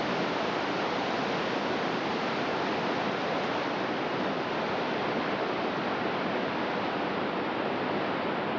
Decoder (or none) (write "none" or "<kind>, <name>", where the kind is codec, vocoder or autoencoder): none